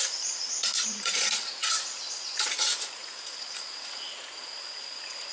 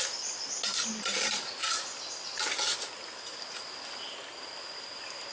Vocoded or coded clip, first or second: first